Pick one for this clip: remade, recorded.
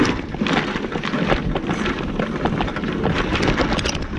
recorded